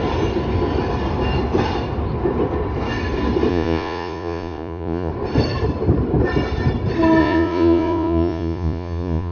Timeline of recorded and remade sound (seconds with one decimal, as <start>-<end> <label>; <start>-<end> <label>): 0.0-3.5 recorded; 3.5-5.1 remade; 5.1-7.2 recorded; 7.2-9.3 remade